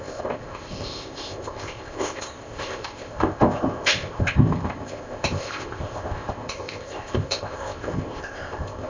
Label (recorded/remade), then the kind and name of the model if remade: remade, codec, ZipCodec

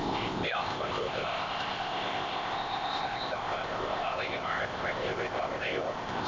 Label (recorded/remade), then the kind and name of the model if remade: remade, codec, ZipCodec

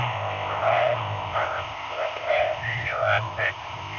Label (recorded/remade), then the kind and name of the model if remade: remade, codec, ZipCodec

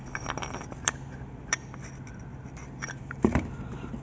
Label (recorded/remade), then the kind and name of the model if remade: recorded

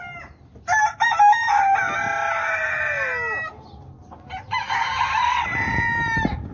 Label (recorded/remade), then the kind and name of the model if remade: recorded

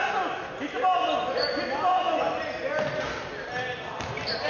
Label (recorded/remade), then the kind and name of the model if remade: recorded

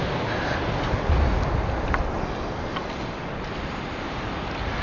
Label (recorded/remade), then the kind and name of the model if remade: recorded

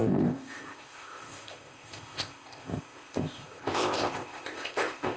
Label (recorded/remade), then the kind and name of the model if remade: remade, codec, ZipCodec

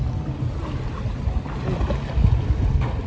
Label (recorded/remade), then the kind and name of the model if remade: recorded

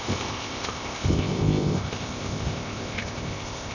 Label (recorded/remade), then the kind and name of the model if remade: remade, codec, ZipCodec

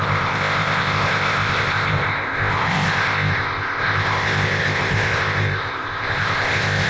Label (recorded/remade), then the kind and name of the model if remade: remade, codec, ZipCodec